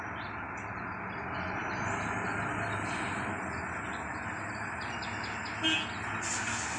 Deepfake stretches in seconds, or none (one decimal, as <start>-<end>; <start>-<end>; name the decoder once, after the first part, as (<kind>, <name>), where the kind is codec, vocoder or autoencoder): none